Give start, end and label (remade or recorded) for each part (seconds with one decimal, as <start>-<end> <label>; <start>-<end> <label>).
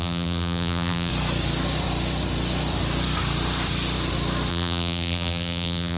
0.0-1.1 remade; 1.1-4.5 recorded; 4.5-6.0 remade